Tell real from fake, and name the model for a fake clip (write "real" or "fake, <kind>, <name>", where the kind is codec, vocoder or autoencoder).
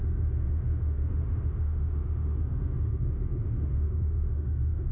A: fake, autoencoder, DAC-VAE